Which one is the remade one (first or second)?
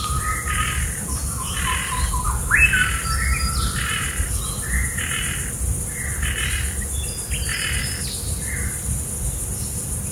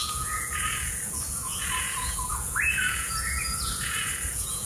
second